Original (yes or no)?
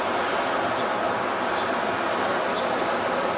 yes